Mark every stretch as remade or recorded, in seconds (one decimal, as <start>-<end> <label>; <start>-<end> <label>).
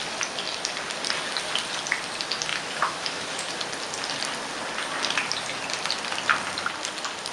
0.0-2.5 recorded; 2.5-3.5 remade; 3.5-7.3 recorded